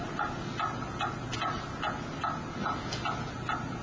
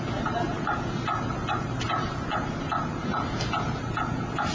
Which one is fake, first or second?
second